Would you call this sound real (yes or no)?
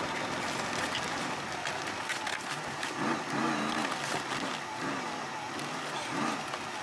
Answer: no